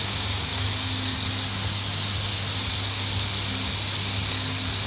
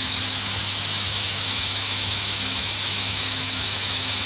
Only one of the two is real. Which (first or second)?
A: first